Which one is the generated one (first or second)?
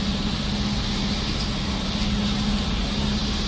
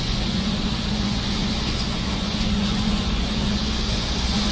second